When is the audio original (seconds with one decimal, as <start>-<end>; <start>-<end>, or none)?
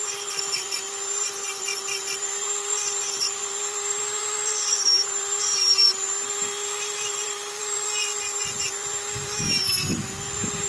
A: none